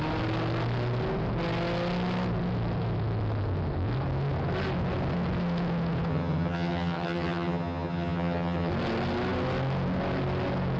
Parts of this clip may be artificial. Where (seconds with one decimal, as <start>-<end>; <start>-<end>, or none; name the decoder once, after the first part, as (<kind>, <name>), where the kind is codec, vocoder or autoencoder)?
6.1-8.7 (vocoder, HiFi-GAN)